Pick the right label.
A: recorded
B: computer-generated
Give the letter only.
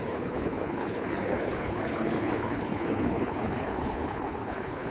B